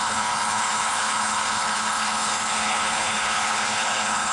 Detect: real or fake fake